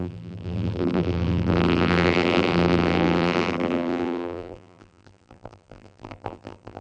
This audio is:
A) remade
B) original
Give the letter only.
A